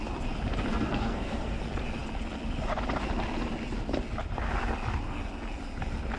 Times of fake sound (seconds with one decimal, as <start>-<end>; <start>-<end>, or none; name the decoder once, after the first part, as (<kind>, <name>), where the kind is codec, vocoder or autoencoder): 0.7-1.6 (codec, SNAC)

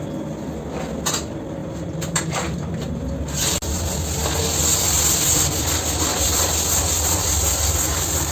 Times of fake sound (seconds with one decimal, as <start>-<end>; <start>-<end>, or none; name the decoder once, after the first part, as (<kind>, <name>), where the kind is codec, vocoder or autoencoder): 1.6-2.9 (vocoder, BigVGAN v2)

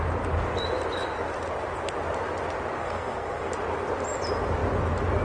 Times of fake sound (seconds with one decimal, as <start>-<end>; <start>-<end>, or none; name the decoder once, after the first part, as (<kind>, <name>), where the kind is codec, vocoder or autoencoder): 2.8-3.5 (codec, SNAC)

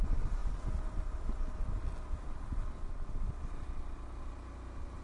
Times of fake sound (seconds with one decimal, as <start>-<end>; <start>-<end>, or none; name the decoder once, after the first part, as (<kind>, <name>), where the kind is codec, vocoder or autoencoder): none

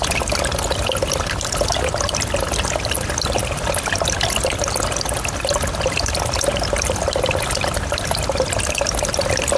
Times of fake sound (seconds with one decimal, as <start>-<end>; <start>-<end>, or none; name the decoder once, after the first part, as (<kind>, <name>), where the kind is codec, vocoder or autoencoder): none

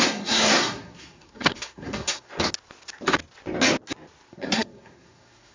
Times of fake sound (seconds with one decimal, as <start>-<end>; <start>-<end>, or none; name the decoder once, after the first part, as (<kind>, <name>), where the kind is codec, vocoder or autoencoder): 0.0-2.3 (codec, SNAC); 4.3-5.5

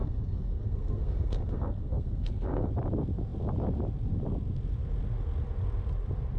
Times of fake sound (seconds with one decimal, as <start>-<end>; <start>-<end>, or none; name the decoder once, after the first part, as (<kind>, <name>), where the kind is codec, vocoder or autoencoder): 0.0-2.7 (codec, SNAC)

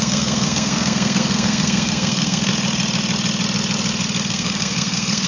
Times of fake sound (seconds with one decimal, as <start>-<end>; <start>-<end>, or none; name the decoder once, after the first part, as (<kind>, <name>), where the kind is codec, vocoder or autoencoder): 0.0-2.5 (codec, SNAC); 4.3-5.3